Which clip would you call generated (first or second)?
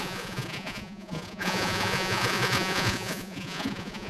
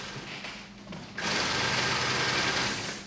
first